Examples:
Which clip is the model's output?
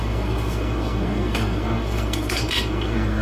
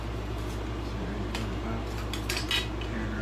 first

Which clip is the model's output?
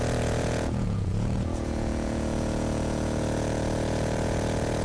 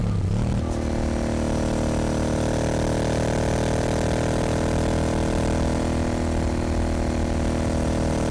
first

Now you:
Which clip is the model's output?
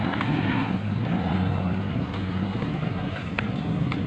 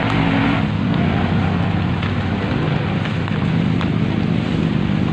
first